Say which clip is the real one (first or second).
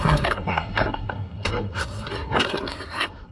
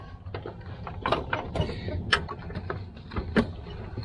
second